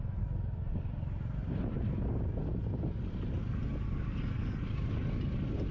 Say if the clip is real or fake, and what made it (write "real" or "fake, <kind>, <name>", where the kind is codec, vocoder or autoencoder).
real